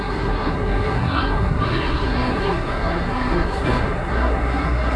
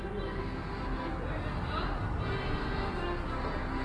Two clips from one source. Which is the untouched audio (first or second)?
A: second